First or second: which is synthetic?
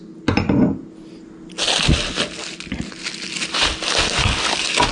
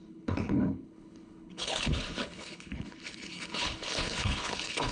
second